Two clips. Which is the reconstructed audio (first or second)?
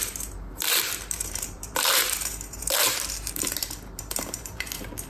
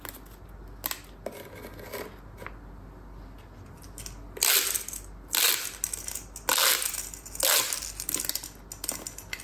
first